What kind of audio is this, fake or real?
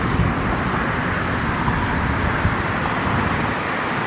real